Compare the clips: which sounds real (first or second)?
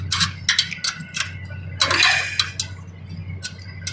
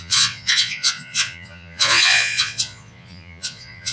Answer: first